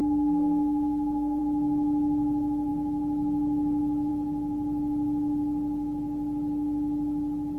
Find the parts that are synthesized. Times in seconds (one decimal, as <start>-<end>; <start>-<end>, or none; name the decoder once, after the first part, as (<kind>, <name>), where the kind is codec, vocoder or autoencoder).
0.0-1.4 (codec, SNAC)